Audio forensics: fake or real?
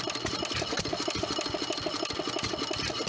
real